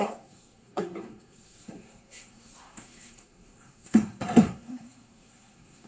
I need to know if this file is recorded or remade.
remade